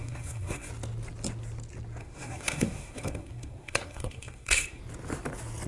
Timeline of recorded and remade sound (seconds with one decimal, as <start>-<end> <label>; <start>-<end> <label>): 0.0-0.7 remade; 0.7-2.0 recorded; 2.0-4.8 remade; 4.8-5.7 recorded